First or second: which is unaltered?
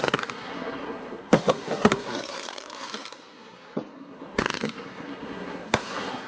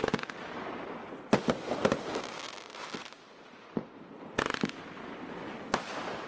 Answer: second